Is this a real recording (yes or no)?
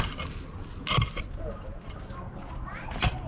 yes